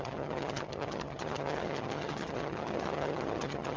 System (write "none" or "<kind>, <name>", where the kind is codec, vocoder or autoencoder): vocoder, HiFi-GAN